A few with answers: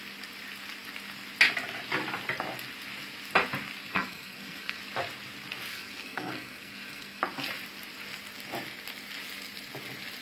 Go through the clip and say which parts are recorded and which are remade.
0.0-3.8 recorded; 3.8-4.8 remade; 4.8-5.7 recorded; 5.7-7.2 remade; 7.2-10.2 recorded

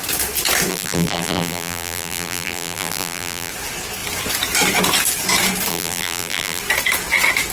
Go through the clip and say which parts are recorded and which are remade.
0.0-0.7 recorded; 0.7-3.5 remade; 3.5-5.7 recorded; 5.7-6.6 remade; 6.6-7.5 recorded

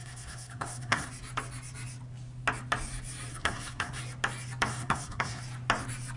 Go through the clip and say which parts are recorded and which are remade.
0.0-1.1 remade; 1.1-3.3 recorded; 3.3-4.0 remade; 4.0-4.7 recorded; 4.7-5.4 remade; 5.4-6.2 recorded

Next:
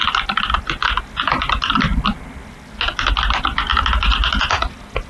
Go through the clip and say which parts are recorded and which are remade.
0.0-5.1 recorded